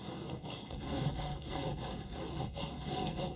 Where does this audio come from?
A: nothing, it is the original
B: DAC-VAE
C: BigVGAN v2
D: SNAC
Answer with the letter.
D